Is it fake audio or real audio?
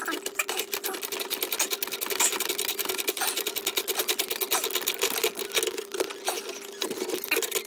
real